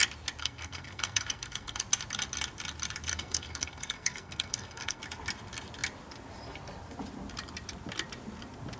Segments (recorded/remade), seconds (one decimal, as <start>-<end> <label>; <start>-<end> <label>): 0.0-0.4 recorded; 0.4-1.8 remade; 1.8-3.1 recorded; 3.1-5.0 remade; 5.0-8.8 recorded